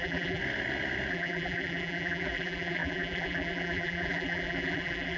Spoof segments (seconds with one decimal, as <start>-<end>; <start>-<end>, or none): 0.0-0.4; 1.1-5.2